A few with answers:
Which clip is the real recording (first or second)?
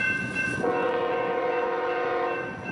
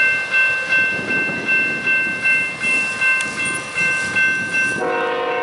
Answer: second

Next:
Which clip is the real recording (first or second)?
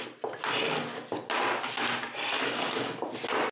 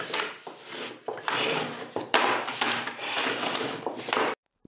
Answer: first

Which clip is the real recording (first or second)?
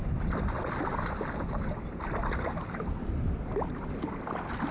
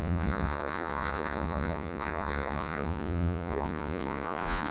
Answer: first